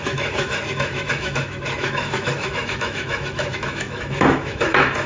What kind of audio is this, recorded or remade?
remade